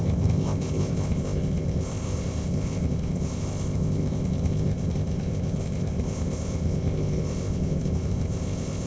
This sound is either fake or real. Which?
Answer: fake